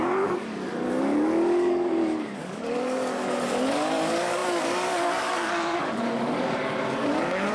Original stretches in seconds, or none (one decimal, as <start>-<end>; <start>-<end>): none